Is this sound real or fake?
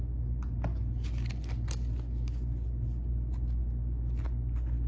real